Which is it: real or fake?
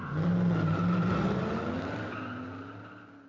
real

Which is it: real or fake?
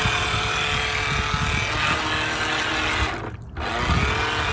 real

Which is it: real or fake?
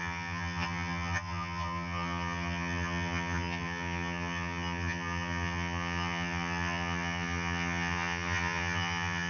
fake